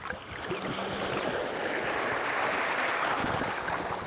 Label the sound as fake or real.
real